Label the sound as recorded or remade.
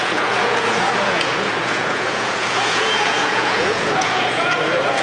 remade